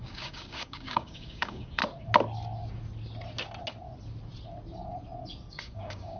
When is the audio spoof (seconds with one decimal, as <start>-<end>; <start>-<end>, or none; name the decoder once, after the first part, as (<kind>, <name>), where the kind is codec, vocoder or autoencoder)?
0.0-1.8 (codec, DAC); 5.5-6.2